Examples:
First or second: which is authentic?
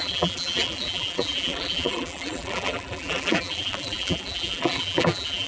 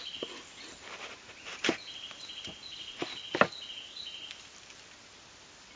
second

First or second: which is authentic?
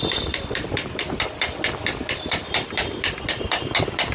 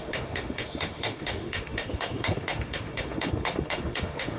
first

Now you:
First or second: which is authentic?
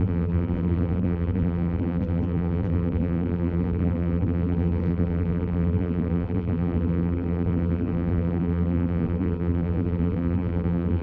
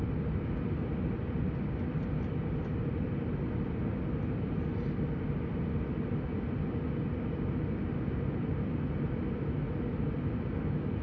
second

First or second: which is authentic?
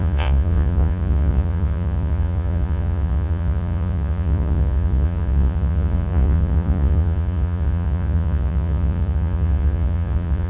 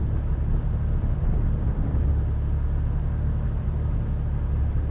second